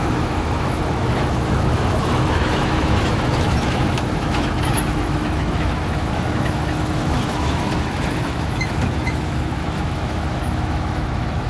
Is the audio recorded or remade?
remade